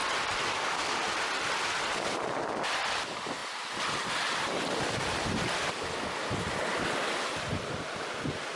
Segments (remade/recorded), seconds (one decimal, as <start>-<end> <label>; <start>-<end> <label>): 0.0-2.4 remade; 2.4-8.6 recorded